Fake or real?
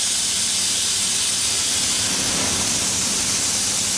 real